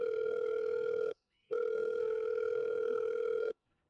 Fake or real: fake